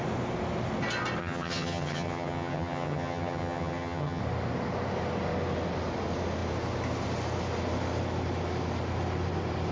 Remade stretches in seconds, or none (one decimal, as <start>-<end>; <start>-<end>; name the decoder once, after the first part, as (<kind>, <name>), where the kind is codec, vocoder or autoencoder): 1.2-4.2 (vocoder, HiFi-GAN)